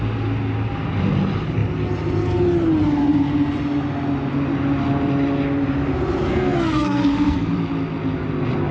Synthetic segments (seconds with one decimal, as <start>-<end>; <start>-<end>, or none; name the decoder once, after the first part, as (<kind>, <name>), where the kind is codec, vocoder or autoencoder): 6.3-7.5 (codec, SNAC)